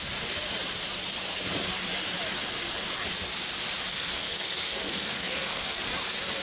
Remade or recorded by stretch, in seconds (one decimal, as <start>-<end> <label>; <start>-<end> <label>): 0.0-3.9 recorded; 3.9-5.9 remade; 5.9-6.4 recorded